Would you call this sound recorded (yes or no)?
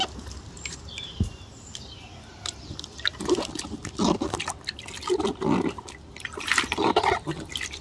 yes